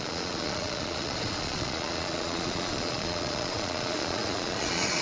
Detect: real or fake fake